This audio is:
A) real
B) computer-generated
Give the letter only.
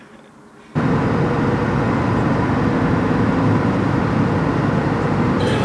A